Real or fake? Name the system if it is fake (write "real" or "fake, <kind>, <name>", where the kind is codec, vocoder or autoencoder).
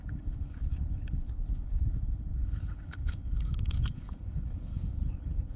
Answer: fake, codec, HILCodec